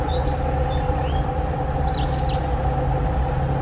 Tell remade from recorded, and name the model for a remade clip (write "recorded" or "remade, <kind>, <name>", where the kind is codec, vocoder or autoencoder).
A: recorded